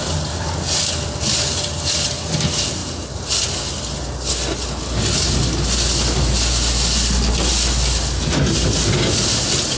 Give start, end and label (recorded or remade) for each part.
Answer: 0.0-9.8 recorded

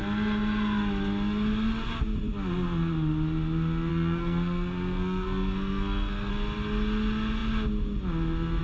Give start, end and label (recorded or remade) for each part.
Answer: 0.0-3.9 recorded; 3.9-6.3 remade; 6.3-8.6 recorded